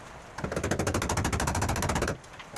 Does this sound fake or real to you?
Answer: real